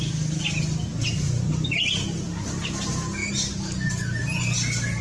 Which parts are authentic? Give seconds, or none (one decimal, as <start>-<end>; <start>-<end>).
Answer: 0.0-5.0